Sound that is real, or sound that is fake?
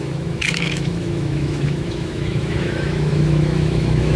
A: fake